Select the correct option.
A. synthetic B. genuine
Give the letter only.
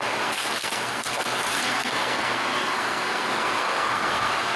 A